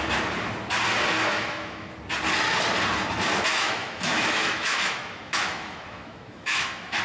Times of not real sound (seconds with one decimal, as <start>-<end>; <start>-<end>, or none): 1.3-2.0; 3.5-7.0